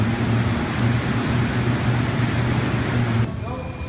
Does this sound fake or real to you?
real